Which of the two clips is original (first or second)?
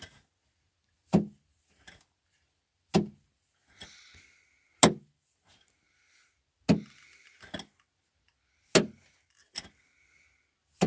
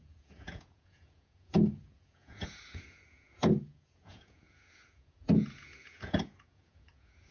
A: first